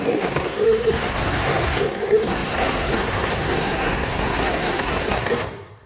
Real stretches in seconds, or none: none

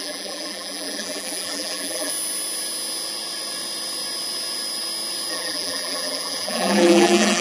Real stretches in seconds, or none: 2.1-5.3

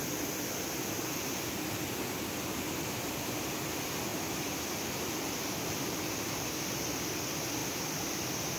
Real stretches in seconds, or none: 0.0-4.1; 6.6-7.6